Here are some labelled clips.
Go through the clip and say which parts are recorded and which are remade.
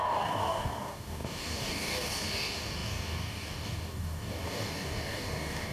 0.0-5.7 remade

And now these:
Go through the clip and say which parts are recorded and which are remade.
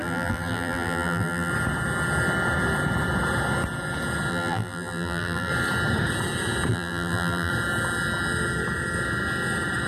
0.0-1.5 remade; 1.5-4.3 recorded; 4.3-5.5 remade; 5.5-6.7 recorded; 6.7-7.5 remade; 7.5-9.9 recorded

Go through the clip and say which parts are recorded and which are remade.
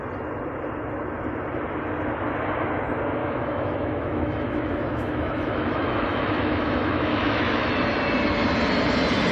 0.0-3.2 recorded; 3.2-7.7 remade; 7.7-9.3 recorded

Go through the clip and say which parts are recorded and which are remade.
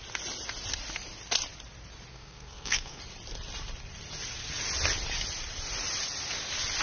0.0-2.1 recorded; 2.1-3.0 remade; 3.0-6.8 recorded